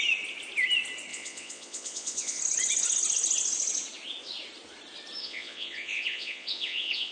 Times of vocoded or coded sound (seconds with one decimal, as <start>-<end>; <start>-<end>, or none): 1.1-2.4; 5.2-7.1